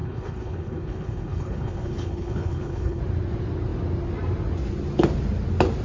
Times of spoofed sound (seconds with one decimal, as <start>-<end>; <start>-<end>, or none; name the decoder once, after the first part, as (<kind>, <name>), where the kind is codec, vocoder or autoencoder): 0.0-3.0 (codec, HILCodec)